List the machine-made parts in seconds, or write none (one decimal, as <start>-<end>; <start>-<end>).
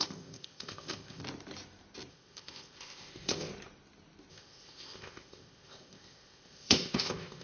0.0-1.2; 2.1-3.5; 4.3-7.4